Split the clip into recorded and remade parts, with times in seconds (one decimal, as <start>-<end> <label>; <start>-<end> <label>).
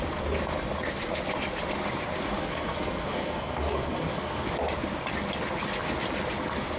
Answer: 0.0-2.4 recorded; 2.4-4.5 remade; 4.5-6.8 recorded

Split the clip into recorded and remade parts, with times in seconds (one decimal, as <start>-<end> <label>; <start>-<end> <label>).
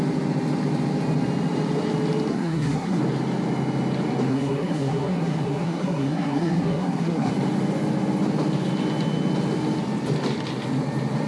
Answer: 0.0-2.3 recorded; 2.3-3.0 remade; 3.0-4.3 recorded; 4.3-7.3 remade; 7.3-11.3 recorded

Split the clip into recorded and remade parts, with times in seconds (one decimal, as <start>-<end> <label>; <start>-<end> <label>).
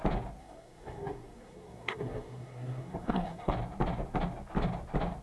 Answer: 0.0-0.4 recorded; 0.4-3.5 remade; 3.5-5.2 recorded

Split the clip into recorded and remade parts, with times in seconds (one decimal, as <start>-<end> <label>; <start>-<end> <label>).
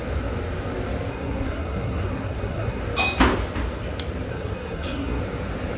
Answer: 0.0-1.1 recorded; 1.1-2.8 remade; 2.8-4.3 recorded; 4.3-5.2 remade; 5.2-5.8 recorded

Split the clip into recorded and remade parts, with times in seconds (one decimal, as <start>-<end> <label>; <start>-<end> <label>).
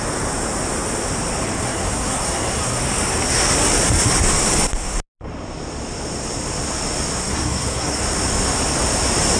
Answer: 0.0-1.6 recorded; 1.6-2.8 remade; 2.8-7.2 recorded; 7.2-8.0 remade; 8.0-9.4 recorded